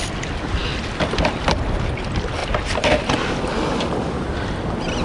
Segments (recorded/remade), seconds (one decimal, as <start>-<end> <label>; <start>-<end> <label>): 0.0-5.0 recorded